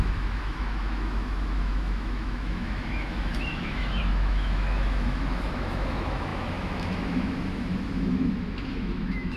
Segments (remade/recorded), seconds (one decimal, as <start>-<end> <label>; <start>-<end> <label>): 0.0-9.4 remade